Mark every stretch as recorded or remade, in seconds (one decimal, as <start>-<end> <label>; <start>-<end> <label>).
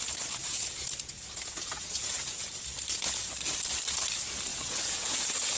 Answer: 0.0-0.4 recorded; 0.4-2.5 remade; 2.5-4.5 recorded; 4.5-5.6 remade